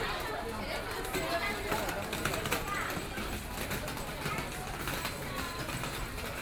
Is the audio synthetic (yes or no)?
no